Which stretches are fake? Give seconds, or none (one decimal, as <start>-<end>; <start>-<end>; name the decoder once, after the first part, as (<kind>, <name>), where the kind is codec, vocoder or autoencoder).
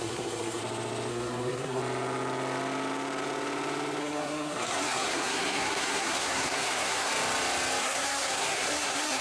0.0-0.6 (codec, SNAC); 1.1-1.8; 4.0-7.1; 7.8-9.2